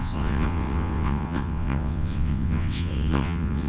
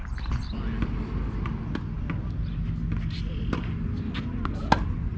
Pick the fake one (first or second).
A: first